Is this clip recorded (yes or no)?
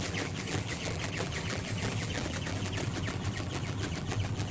no